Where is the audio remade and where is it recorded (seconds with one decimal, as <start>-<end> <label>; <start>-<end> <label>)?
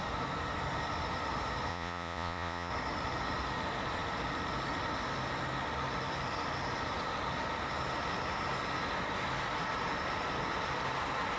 0.0-1.7 recorded; 1.7-2.7 remade; 2.7-11.4 recorded